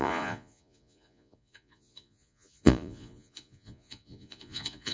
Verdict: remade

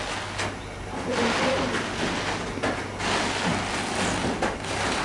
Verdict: recorded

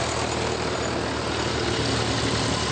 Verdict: recorded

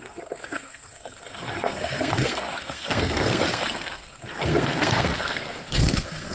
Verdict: remade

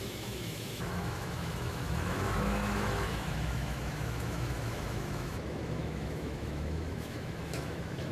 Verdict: remade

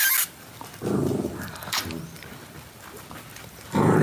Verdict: recorded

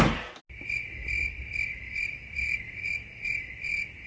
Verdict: recorded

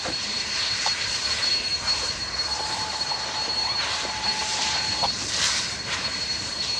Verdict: remade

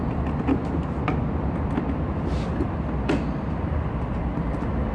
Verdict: recorded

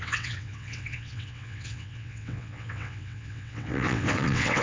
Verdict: remade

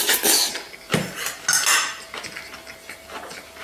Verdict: recorded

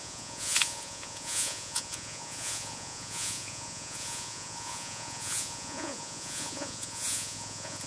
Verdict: remade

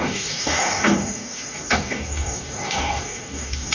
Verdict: remade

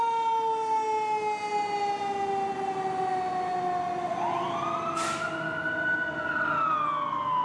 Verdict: recorded